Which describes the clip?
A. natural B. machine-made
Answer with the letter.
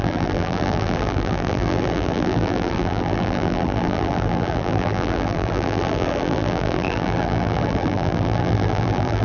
B